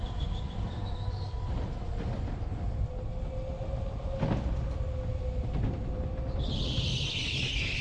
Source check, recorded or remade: recorded